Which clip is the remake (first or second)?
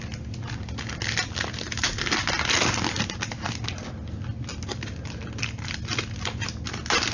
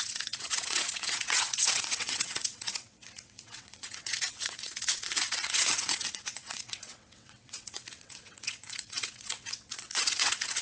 second